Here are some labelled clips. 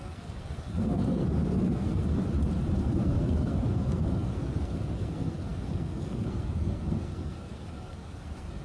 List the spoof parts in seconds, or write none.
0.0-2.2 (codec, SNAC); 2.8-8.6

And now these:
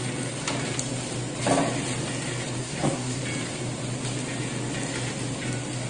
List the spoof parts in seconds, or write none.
2.6-3.2 (codec, SNAC)

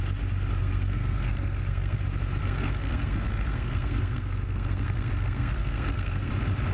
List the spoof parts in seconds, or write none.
0.6-2.0 (codec, SNAC); 2.4-6.3

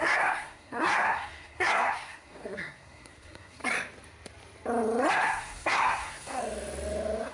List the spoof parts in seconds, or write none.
0.0-3.6 (codec, SNAC); 5.1-6.4

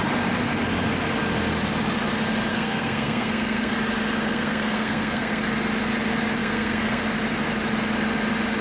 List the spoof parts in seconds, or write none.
2.5-3.7 (codec, SNAC); 4.2-5.4; 6.4-7.0

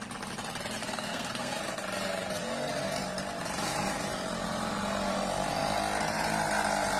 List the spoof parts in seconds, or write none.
0.8-1.6 (codec, SNAC)

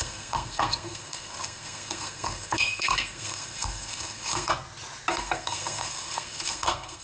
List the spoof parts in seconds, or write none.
0.0-4.5 (codec, SNAC); 5.1-7.0

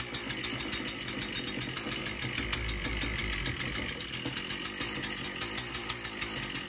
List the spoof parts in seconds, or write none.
none